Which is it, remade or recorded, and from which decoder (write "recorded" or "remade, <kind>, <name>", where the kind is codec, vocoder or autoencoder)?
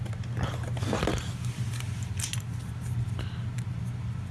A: recorded